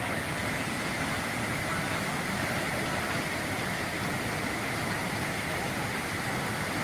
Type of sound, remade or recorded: recorded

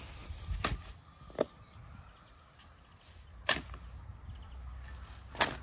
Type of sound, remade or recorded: recorded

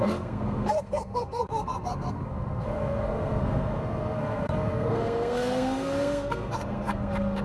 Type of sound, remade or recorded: remade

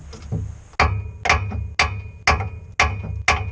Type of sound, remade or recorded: recorded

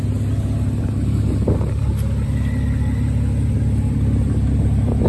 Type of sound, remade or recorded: recorded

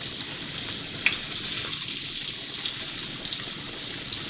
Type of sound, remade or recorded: recorded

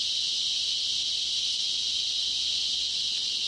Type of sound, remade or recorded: recorded